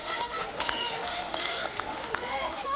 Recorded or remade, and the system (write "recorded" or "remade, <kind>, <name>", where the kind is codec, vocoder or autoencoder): remade, autoencoder, DAC-VAE